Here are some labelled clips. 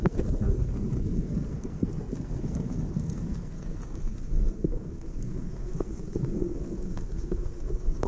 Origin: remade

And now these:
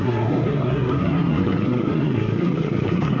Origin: remade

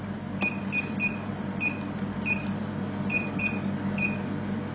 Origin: recorded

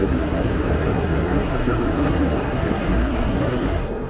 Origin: remade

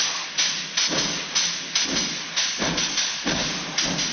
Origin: recorded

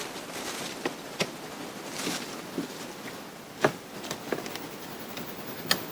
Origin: recorded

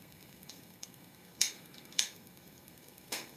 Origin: remade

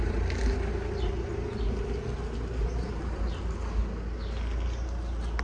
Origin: recorded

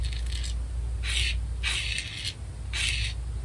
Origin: recorded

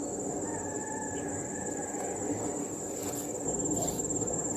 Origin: recorded